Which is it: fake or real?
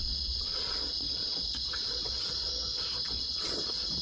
fake